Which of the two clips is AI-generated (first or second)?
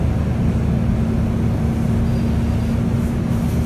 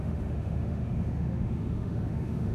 second